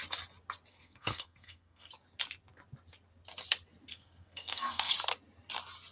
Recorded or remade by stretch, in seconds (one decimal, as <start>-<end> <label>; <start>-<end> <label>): 0.0-0.7 recorded; 0.7-1.9 remade; 1.9-3.9 recorded; 3.9-4.9 remade; 4.9-5.9 recorded